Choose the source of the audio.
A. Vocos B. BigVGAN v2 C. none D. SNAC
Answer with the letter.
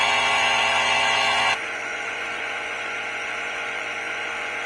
A